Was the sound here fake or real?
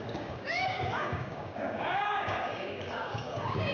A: fake